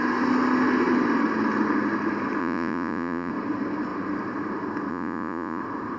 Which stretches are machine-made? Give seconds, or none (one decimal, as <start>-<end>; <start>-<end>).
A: 2.4-3.3; 4.9-5.6